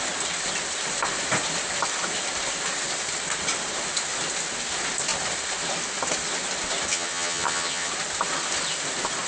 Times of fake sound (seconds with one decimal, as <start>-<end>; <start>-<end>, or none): 6.9-7.9